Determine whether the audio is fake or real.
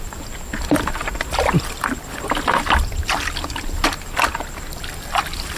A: real